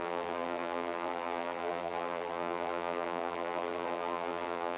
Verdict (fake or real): fake